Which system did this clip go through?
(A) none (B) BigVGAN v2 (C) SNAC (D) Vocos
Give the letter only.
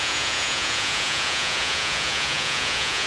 D